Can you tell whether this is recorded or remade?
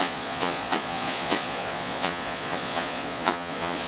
remade